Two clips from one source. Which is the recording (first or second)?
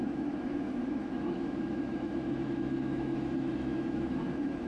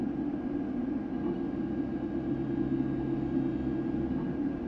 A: second